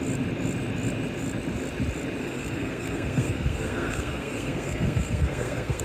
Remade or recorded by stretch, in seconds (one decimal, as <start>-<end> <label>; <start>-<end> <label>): 0.0-2.2 recorded; 2.2-5.8 remade